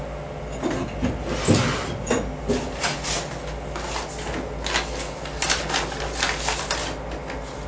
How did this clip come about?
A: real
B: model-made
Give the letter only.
A